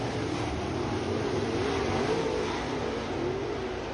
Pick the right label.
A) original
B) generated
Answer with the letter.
A